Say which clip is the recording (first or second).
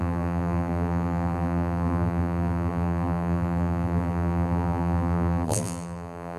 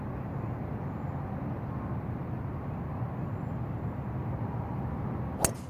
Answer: second